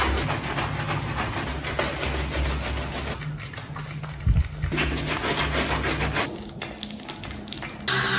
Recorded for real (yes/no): yes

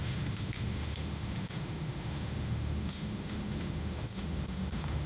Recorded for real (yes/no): no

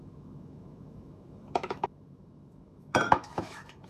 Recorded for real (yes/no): no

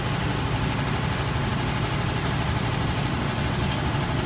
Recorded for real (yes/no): yes